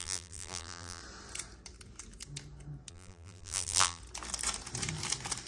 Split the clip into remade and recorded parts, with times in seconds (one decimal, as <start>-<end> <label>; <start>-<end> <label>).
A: 0.0-1.0 remade; 1.0-2.9 recorded; 2.9-4.0 remade; 4.0-5.5 recorded